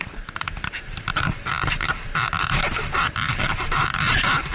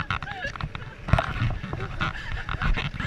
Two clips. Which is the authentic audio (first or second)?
second